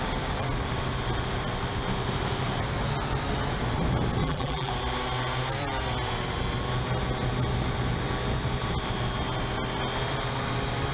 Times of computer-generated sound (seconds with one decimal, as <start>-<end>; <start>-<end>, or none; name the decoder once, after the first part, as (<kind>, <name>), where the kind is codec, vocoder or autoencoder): 4.2-4.7 (vocoder, BigVGAN v2)